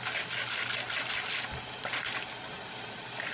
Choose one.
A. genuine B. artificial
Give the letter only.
A